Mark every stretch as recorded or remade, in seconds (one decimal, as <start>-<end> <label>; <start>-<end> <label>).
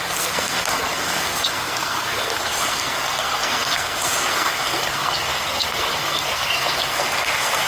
0.0-7.7 remade